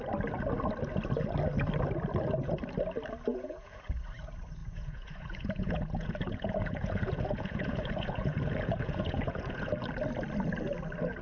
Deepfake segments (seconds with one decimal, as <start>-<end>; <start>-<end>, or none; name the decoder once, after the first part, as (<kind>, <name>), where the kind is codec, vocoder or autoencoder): 3.3-3.9 (vocoder, Vocos); 4.6-9.7